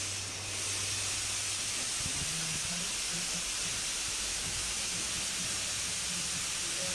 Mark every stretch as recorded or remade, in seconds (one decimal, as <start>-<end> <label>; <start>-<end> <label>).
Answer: 0.0-4.3 recorded; 4.3-5.1 remade; 5.1-6.9 recorded